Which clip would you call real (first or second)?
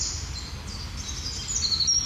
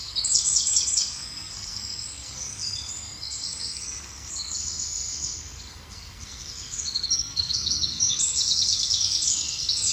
first